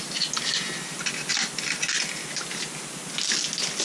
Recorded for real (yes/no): yes